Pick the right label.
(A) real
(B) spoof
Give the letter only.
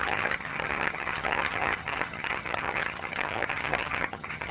B